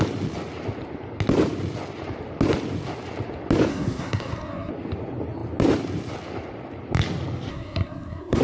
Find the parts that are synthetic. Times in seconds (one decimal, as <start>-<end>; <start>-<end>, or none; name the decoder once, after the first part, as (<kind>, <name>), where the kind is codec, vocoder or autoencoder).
3.7-4.7 (codec, SNAC); 7.5-8.4